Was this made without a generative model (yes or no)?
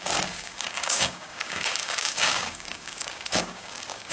no